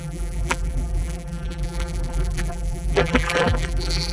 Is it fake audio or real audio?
fake